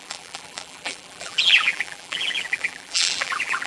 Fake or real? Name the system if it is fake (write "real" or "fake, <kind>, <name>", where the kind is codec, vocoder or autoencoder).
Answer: fake, vocoder, BigVGAN v2